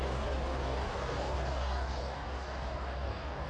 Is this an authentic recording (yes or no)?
no